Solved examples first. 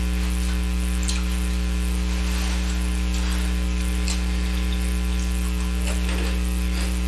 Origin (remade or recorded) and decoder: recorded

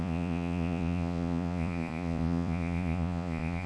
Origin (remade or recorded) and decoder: remade, vocoder, Vocos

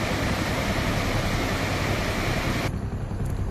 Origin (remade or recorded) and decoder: recorded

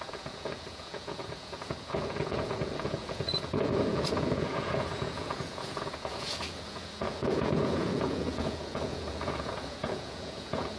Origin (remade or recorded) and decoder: remade, vocoder, Vocos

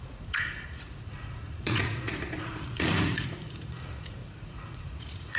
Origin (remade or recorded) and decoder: remade, vocoder, Vocos